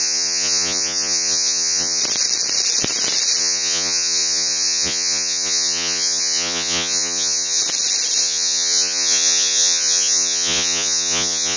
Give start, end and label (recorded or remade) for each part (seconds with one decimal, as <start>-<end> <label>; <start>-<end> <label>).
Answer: 0.0-2.0 remade; 2.0-3.4 recorded; 3.4-7.6 remade; 7.6-8.2 recorded; 8.2-11.6 remade

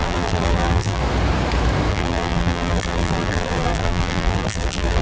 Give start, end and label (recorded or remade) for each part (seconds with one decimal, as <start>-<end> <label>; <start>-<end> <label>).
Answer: 0.0-1.0 remade; 1.0-1.9 recorded; 1.9-5.0 remade

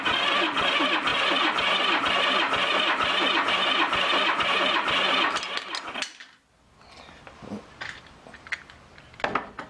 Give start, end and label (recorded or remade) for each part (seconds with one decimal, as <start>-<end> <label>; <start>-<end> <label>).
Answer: 0.0-9.7 recorded

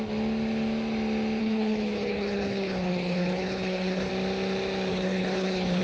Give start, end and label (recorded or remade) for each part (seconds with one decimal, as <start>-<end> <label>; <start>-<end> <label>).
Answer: 0.0-1.4 recorded; 1.4-4.1 remade; 4.1-4.9 recorded; 4.9-5.8 remade

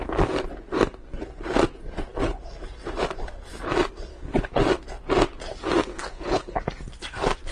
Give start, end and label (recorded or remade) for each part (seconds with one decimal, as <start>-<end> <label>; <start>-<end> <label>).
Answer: 0.0-4.1 recorded; 4.1-4.6 remade; 4.6-5.9 recorded; 5.9-6.6 remade; 6.6-7.5 recorded

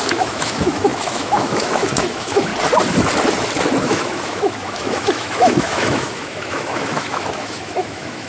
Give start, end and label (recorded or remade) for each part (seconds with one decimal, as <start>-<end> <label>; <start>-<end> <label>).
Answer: 0.0-2.5 remade; 2.5-3.8 recorded; 3.8-8.3 remade